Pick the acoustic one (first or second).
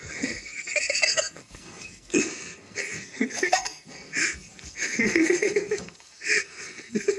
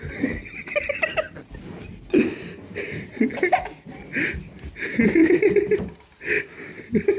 second